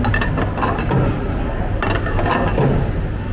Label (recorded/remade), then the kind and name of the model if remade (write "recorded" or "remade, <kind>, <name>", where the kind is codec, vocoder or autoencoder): recorded